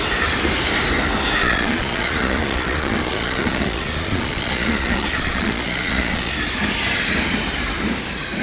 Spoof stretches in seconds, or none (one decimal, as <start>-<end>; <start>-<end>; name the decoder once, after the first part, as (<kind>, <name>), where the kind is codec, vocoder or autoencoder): 1.4-6.3 (vocoder, Vocos)